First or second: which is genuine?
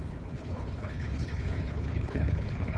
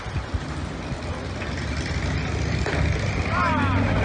second